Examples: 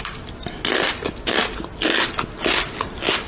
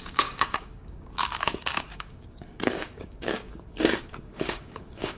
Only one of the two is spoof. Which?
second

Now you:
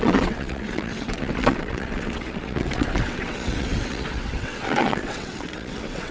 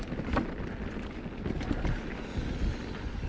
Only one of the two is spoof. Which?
first